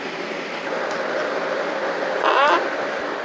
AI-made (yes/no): no